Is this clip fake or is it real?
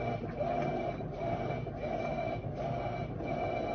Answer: fake